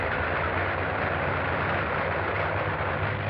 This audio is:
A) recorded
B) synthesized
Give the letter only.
A